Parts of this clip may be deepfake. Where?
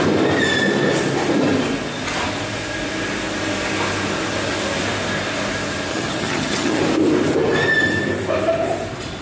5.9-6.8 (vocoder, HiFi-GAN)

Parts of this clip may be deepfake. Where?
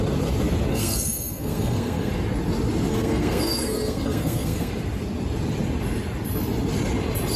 0.7-2.1 (codec, SNAC); 2.9-4.7